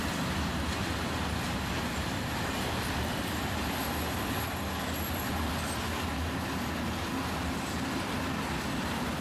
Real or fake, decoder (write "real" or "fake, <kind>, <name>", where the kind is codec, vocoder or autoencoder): real